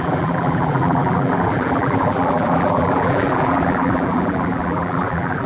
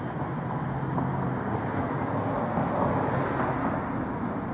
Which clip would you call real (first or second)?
second